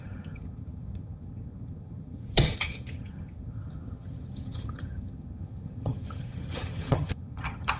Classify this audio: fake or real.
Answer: fake